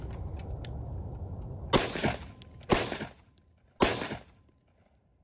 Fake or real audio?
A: real